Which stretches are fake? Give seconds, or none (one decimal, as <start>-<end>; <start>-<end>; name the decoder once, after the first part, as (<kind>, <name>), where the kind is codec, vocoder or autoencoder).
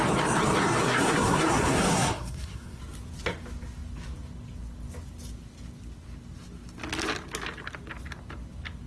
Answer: 0.6-2.8 (codec, SNAC)